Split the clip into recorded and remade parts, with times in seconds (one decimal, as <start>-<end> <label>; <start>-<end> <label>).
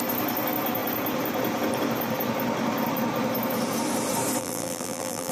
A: 0.0-4.4 recorded; 4.4-5.3 remade